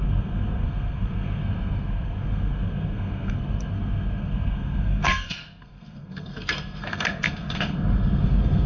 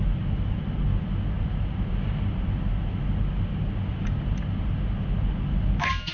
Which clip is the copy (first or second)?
first